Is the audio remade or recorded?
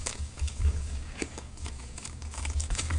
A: remade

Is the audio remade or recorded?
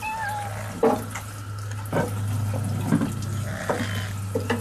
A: recorded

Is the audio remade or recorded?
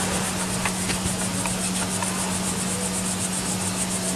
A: recorded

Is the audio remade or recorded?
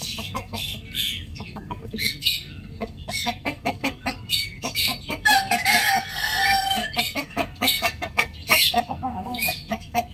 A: remade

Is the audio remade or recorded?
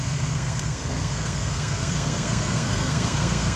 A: remade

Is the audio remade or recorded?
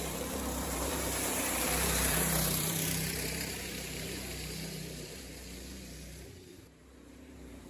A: remade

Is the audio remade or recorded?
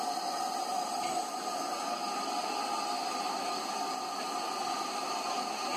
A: recorded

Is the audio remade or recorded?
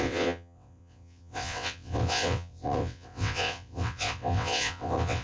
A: remade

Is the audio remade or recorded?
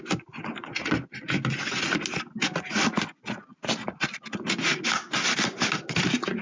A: recorded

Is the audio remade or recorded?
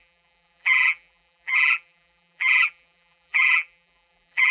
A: remade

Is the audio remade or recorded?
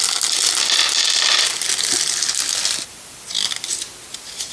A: recorded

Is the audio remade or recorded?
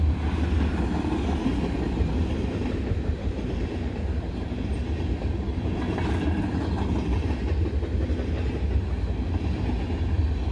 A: recorded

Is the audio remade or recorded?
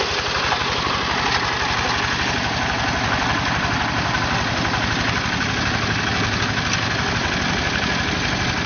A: recorded